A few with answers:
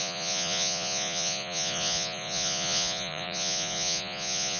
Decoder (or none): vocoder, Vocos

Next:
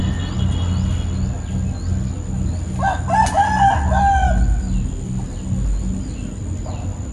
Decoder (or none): none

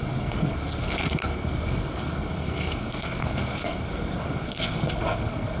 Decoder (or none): codec, SNAC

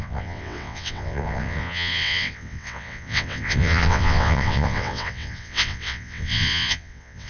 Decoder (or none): vocoder, WaveNeXt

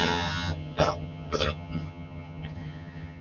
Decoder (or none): vocoder, HiFi-GAN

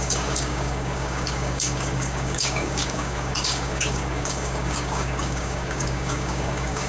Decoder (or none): codec, DAC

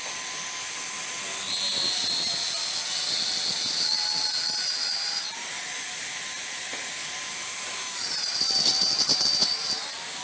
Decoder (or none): none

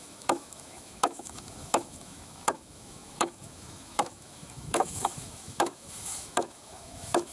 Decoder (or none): autoencoder, DAC-VAE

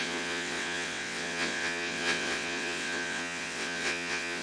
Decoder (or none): vocoder, WaveNeXt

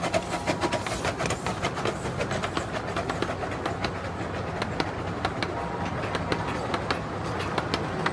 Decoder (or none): none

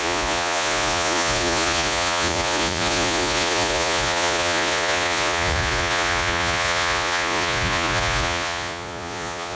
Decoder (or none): vocoder, Vocos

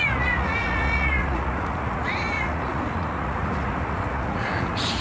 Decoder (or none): vocoder, Vocos